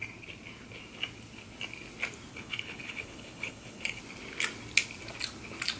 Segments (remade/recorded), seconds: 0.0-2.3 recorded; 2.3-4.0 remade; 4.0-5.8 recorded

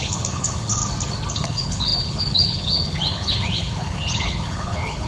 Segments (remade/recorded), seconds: 0.0-0.8 remade; 0.8-1.3 recorded; 1.3-5.1 remade

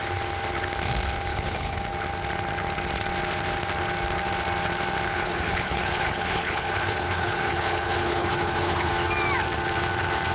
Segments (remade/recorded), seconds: 0.0-1.3 recorded; 1.3-1.8 remade; 1.8-5.1 recorded; 5.1-8.9 remade; 8.9-10.3 recorded

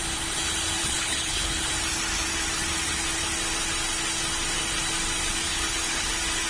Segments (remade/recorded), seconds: 0.0-0.8 recorded; 0.8-1.7 remade; 1.7-5.5 recorded; 5.5-6.1 remade; 6.1-6.5 recorded

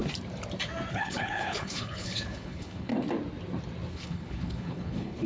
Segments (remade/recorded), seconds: 0.0-0.9 recorded; 0.9-2.9 remade; 2.9-3.9 recorded; 3.9-5.3 remade

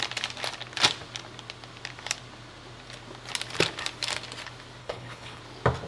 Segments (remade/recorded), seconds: 0.0-4.8 recorded; 4.8-5.4 remade; 5.4-5.9 recorded

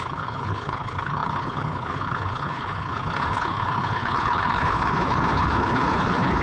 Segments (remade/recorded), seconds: 0.0-6.4 remade

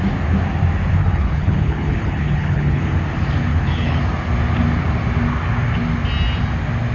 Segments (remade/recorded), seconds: 0.0-1.0 recorded; 1.0-2.8 remade; 2.8-3.5 recorded; 3.5-4.0 remade; 4.0-6.9 recorded